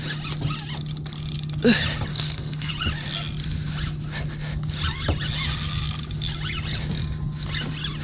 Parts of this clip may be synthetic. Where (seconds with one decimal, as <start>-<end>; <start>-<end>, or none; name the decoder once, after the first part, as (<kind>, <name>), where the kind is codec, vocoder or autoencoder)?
2.1-2.7 (codec, SNAC)